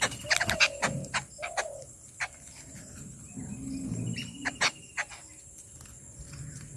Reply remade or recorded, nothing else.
recorded